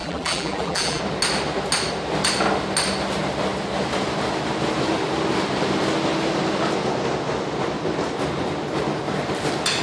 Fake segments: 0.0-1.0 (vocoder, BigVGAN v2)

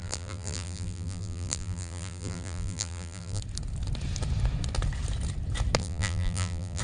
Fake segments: 0.0-3.4 (vocoder, BigVGAN v2); 5.8-6.8

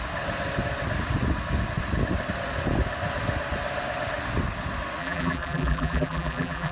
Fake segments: 5.0-6.7 (vocoder, BigVGAN v2)

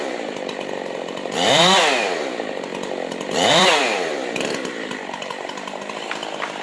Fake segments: 0.0-2.7 (vocoder, BigVGAN v2); 3.5-6.6

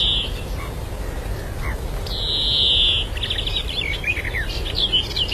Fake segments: 3.5-4.1 (vocoder, BigVGAN v2)

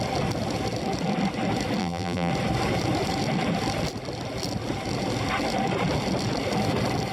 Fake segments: 1.8-2.3 (vocoder, BigVGAN v2)